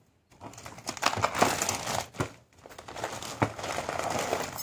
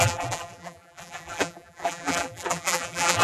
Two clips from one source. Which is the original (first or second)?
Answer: first